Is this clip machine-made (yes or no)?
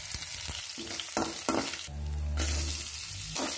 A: no